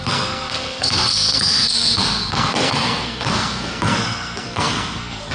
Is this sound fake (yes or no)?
yes